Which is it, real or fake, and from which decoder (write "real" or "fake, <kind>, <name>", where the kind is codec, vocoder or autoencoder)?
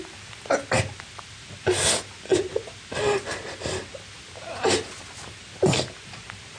real